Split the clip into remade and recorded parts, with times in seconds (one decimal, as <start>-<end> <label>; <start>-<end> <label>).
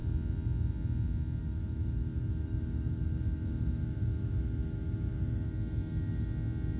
0.0-1.4 recorded; 1.4-5.5 remade; 5.5-6.8 recorded